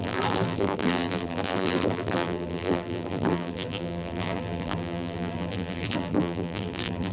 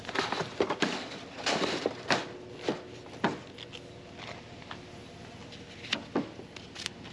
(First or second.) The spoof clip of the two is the first